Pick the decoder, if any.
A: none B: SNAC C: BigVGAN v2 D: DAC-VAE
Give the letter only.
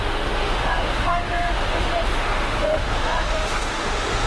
D